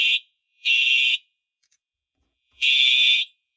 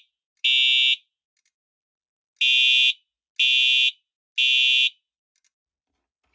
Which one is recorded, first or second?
second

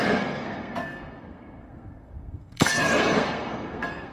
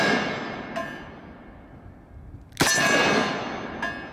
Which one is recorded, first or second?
second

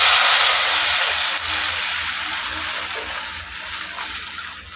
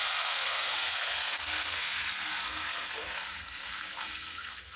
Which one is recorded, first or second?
first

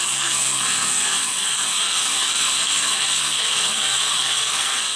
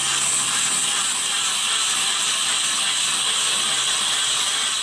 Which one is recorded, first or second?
second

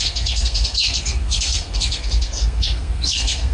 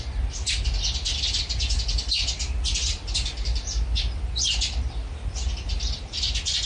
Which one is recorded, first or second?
second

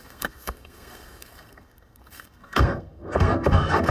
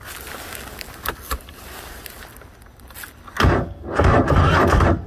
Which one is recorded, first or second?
second